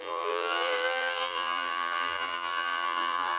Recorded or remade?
remade